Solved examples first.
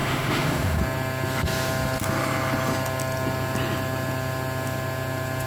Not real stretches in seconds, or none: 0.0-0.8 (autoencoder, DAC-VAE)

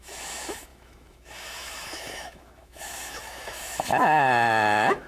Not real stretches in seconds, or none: 0.0-5.1 (autoencoder, DAC-VAE)

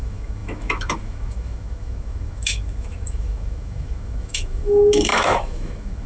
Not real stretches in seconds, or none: 0.0-6.1 (autoencoder, DAC-VAE)

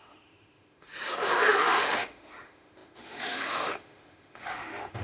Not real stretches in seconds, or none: 0.0-5.0 (autoencoder, DAC-VAE)

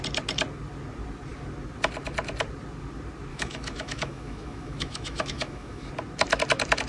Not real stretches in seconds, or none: 3.3-5.9 (autoencoder, DAC-VAE)

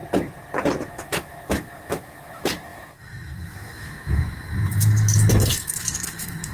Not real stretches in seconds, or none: 0.9-6.5 (autoencoder, DAC-VAE)

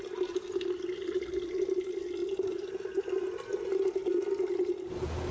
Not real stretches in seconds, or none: none

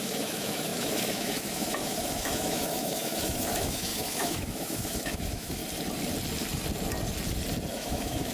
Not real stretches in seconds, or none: 0.0-5.6 (autoencoder, DAC-VAE); 7.7-8.3